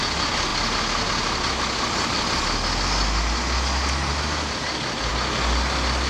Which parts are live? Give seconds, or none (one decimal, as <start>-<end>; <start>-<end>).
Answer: 0.0-6.1